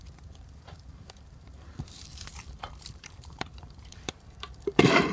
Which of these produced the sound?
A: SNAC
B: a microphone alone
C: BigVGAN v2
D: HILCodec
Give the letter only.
C